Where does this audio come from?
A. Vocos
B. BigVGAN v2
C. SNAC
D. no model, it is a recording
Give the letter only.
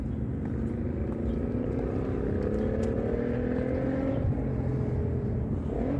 D